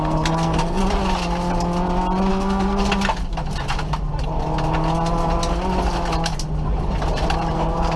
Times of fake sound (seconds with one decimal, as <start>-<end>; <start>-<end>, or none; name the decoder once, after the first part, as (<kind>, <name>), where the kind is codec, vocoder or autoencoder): 0.0-0.8 (codec, SNAC); 2.3-2.8; 7.5-8.0